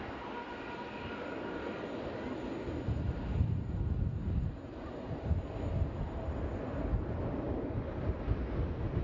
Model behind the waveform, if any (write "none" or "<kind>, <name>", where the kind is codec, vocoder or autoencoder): none